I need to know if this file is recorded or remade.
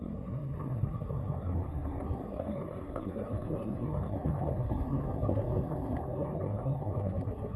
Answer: remade